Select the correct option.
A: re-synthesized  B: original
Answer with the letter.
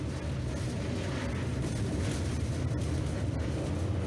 B